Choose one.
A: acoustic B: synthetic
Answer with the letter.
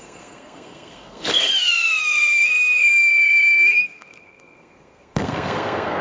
B